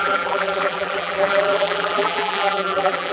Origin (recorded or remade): remade